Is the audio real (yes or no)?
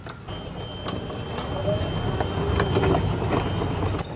yes